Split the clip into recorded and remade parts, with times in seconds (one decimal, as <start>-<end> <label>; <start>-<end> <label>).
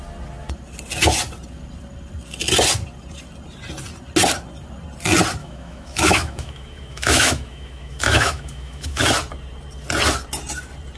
0.0-5.4 recorded; 5.4-9.0 remade; 9.0-11.0 recorded